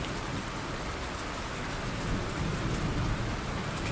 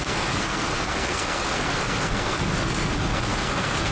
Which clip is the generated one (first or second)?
second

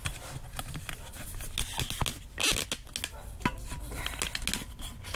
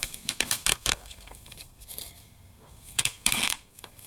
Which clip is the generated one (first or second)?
second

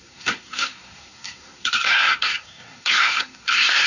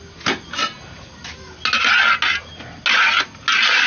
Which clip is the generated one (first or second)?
first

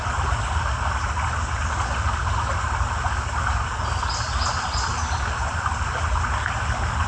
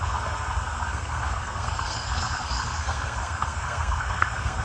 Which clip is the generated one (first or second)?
second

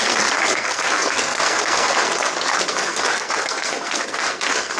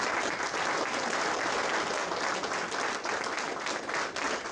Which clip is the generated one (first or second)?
first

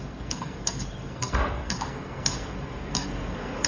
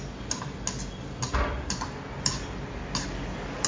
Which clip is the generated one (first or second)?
first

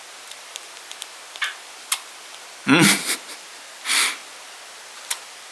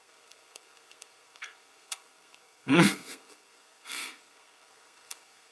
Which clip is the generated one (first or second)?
second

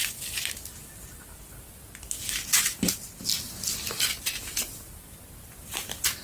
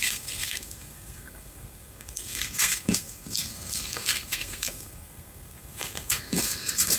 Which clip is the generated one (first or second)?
second